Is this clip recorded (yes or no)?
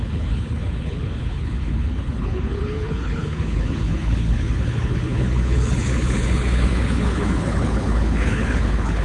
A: no